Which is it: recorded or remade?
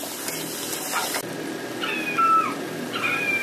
recorded